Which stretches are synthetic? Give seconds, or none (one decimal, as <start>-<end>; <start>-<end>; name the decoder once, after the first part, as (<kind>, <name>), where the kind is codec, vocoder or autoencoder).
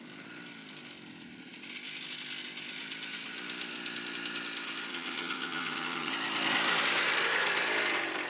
4.9-6.1 (vocoder, HiFi-GAN)